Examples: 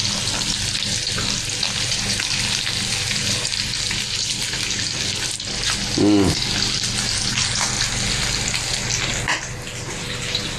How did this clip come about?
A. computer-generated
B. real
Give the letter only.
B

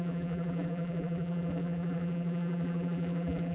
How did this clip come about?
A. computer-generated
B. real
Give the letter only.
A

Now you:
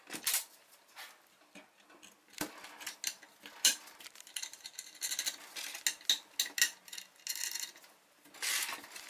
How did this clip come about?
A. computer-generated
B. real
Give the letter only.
B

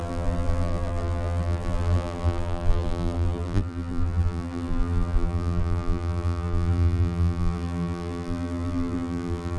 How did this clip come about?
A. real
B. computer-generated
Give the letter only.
B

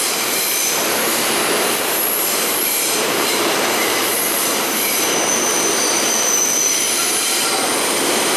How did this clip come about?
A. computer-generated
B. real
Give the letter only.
A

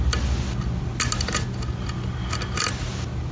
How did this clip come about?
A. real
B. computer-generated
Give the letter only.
A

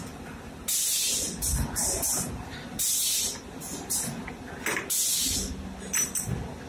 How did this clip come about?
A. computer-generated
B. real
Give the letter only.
B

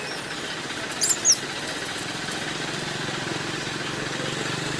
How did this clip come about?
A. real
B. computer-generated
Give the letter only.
A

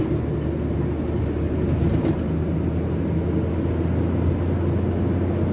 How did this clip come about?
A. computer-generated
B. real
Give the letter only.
B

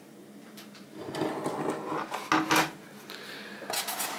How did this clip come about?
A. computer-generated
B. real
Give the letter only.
B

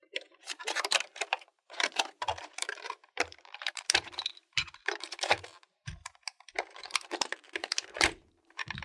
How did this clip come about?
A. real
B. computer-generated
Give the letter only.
B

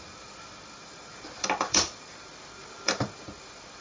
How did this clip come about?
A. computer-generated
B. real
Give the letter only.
A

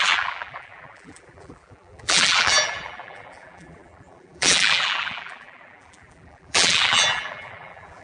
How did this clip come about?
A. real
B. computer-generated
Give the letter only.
B